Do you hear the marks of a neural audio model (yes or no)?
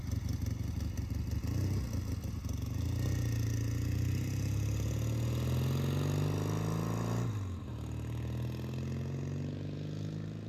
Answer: no